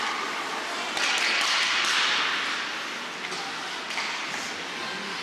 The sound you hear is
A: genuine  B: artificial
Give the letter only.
A